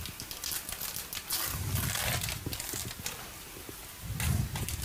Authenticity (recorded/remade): recorded